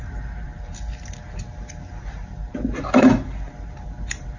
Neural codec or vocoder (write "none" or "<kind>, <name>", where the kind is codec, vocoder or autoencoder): none